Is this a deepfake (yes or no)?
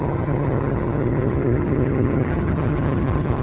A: yes